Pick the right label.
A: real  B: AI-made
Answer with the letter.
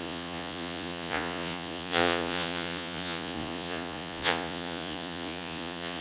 B